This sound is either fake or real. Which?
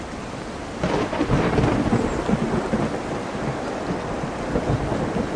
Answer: real